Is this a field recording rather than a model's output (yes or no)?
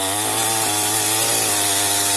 yes